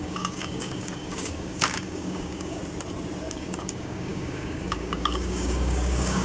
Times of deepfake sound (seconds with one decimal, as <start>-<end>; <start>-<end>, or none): 0.0-2.6; 3.3-6.2